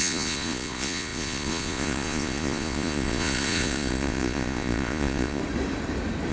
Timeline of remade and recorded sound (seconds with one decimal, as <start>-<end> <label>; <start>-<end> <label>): 0.0-5.4 remade; 5.4-6.3 recorded